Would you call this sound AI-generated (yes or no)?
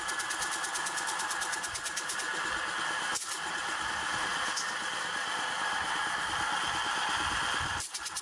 yes